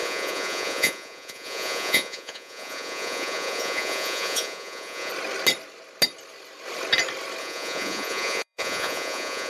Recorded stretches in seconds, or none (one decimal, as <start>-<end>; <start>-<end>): 5.1-7.4